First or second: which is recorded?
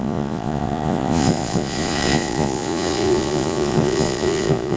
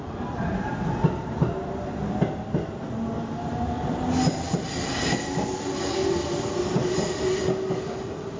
second